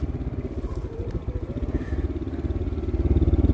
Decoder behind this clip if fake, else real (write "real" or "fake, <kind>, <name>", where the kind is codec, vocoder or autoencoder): real